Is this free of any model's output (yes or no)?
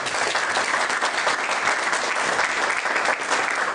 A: yes